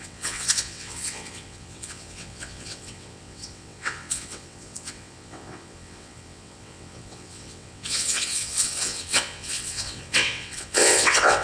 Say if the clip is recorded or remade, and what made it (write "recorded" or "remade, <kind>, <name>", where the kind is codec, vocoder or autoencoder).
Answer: remade, vocoder, WaveNeXt